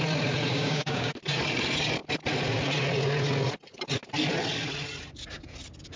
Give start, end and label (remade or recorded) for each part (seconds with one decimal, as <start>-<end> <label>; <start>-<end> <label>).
0.0-0.5 recorded; 0.5-1.1 remade; 1.1-6.0 recorded